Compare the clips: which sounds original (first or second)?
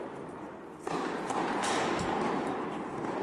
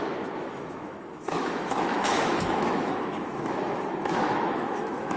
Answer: first